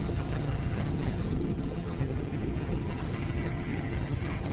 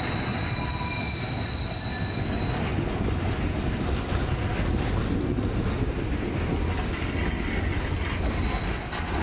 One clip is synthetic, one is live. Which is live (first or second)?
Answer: second